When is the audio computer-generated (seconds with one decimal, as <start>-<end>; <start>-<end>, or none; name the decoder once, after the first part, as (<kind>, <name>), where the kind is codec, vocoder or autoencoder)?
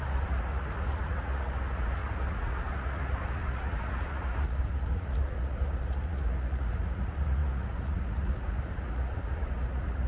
0.0-10.1 (vocoder, Vocos)